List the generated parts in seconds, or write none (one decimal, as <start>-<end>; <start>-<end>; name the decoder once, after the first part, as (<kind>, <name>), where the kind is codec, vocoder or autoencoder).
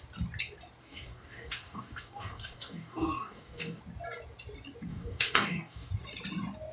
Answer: 0.8-3.8 (codec, DAC); 4.9-5.9